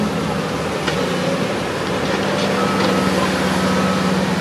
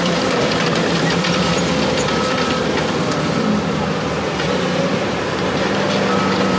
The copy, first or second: second